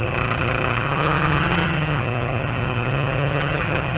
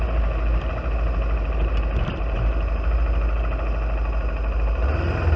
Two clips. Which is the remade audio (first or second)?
first